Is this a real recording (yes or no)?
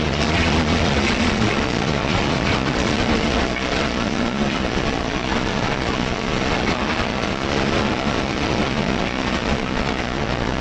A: no